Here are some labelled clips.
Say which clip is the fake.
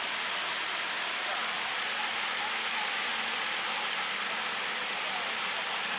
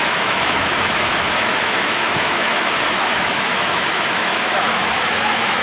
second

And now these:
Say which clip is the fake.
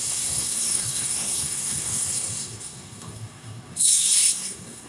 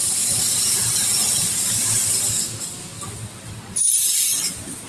first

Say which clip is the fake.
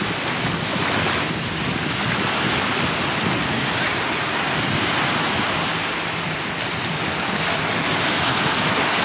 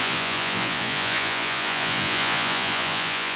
second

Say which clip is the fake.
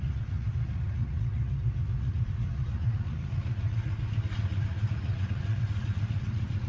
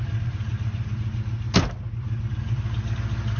first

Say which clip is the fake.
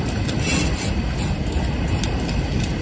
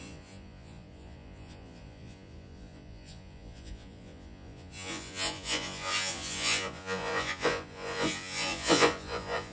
second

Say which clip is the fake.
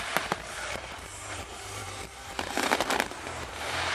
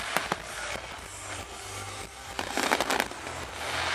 first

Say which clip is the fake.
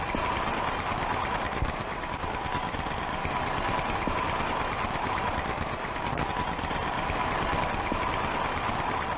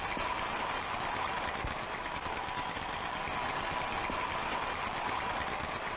first